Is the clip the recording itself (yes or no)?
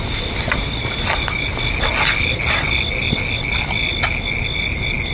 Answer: yes